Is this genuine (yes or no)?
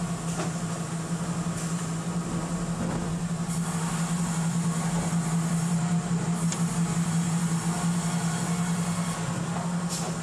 yes